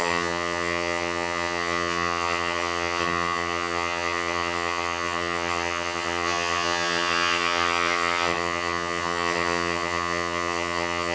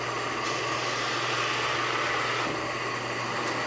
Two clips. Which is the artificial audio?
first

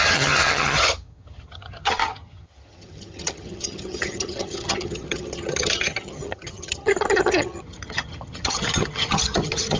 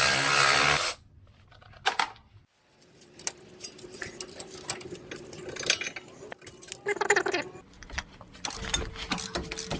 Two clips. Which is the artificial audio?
first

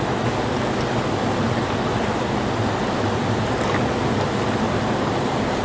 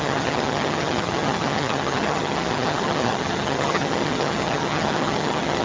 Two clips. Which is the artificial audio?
second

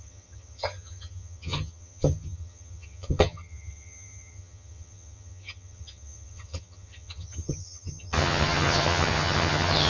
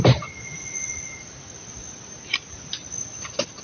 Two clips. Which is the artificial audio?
first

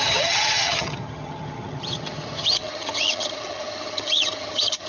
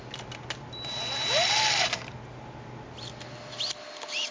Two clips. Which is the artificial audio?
first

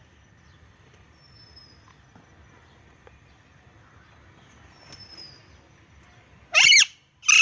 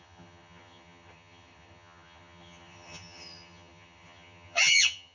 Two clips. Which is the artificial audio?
second